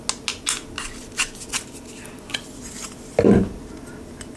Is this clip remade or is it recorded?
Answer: recorded